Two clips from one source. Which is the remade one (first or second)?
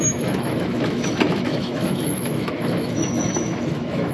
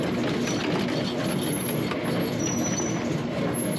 first